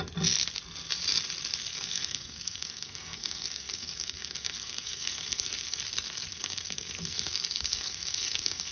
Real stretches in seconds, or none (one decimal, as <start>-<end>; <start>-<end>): 0.0-1.7; 5.8-6.3